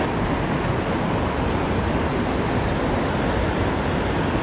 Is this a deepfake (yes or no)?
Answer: no